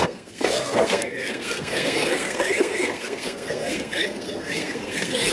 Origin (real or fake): fake